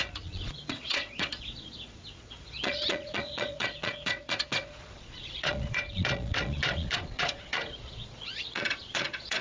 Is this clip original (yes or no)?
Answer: no